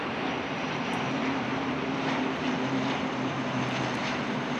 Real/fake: fake